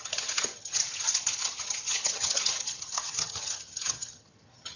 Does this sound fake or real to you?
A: fake